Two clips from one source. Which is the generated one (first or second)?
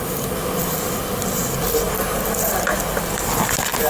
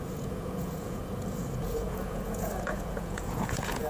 second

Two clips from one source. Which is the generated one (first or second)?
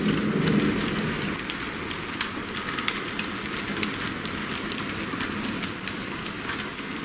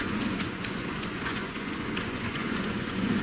second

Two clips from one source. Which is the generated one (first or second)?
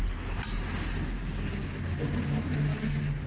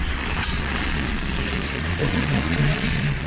second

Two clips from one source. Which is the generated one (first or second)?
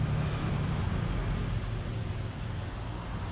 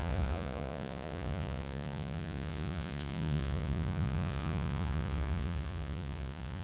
second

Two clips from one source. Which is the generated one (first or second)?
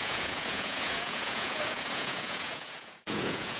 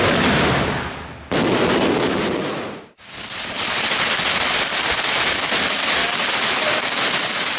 first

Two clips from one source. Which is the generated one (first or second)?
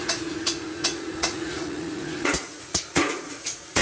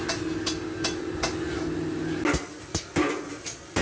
first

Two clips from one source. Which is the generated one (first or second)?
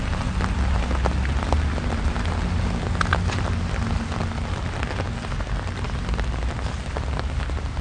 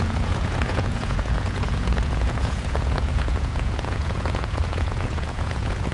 second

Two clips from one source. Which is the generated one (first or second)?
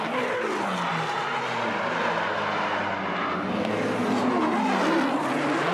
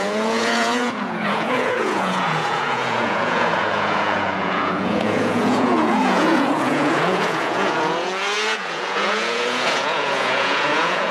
second